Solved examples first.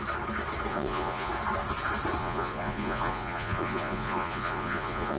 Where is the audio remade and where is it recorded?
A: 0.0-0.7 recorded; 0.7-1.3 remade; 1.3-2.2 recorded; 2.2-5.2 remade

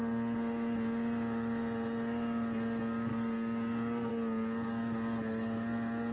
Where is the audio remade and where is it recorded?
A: 0.0-6.1 recorded

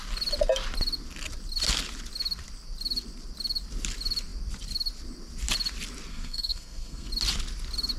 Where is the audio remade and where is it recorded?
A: 0.0-6.1 recorded; 6.1-7.1 remade; 7.1-8.0 recorded